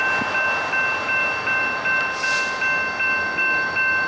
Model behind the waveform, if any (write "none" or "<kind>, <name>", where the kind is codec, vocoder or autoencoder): none